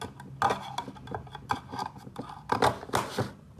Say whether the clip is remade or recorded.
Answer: recorded